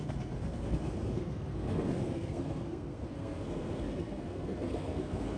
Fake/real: fake